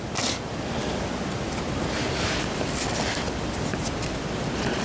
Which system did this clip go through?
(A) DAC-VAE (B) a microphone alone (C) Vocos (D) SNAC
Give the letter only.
B